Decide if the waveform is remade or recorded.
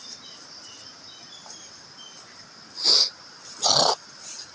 recorded